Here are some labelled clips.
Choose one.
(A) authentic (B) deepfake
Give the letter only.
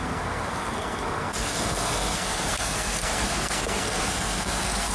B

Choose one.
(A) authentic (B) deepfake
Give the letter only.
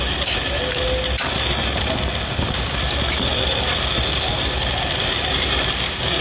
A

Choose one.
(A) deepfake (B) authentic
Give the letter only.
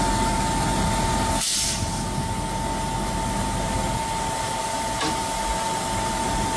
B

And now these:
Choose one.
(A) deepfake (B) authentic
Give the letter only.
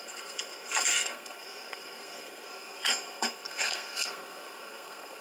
A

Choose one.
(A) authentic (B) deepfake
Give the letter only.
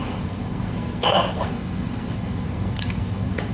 B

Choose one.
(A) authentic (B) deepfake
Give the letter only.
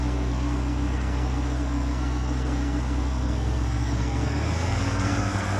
B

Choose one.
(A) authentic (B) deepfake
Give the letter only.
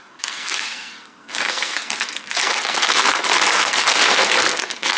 B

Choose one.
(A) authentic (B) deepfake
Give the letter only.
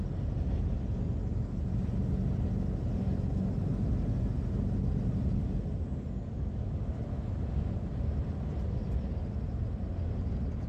A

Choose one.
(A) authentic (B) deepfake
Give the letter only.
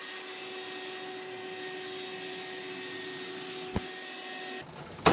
A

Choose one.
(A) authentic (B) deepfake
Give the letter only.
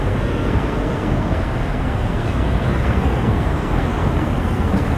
B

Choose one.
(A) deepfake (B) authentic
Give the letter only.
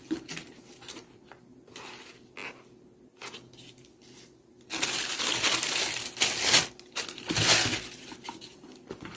B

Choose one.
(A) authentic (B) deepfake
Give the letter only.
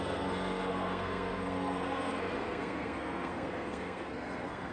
B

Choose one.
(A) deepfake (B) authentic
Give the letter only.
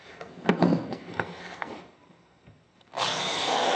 A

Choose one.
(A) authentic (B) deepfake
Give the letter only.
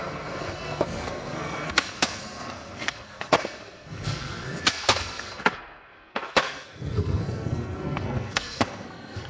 B